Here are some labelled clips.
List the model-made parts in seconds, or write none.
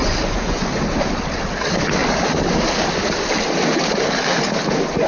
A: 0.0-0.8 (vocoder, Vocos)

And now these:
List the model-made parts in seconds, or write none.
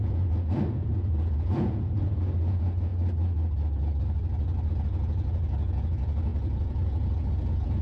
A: 0.0-2.9 (vocoder, Vocos); 4.7-7.8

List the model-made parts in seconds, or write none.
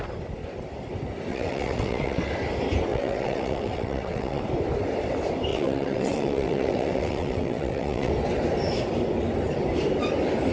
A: 1.3-2.2 (vocoder, WaveNeXt); 2.9-4.4; 5.5-8.1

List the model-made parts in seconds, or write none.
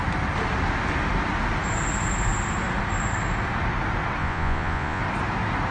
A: 4.2-5.0 (vocoder, Vocos)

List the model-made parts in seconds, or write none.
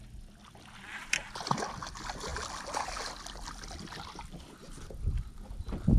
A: none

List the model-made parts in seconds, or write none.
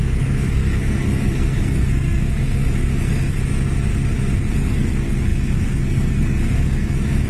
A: 0.0-3.4 (codec, SNAC); 4.5-7.3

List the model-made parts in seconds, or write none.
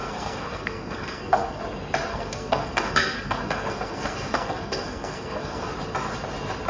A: 0.0-1.6 (codec, SNAC); 2.1-5.7